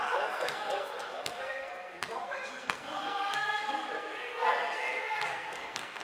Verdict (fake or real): fake